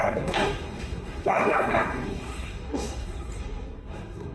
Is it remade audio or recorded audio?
remade